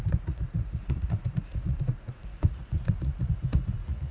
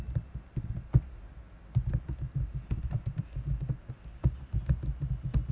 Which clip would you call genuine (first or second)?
second